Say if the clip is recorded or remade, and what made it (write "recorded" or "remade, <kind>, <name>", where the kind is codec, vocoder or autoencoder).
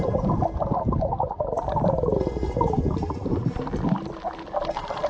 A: recorded